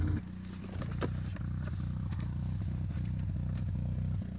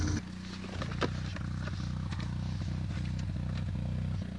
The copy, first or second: first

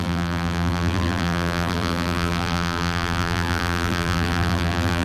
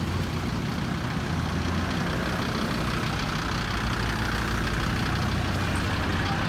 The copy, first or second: first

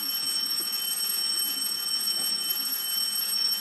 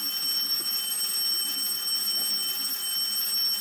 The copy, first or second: first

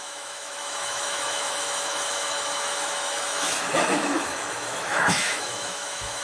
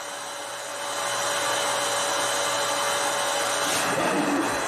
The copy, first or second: first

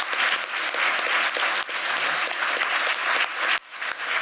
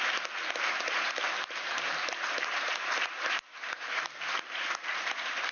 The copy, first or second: second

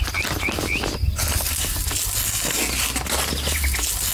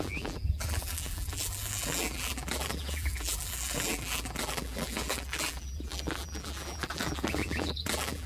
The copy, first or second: second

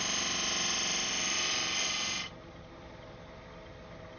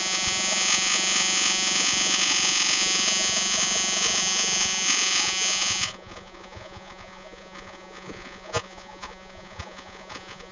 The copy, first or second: second